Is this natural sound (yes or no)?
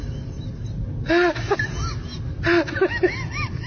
yes